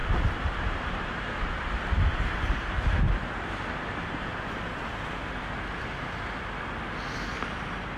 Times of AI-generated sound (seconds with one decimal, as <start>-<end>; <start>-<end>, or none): 0.0-4.8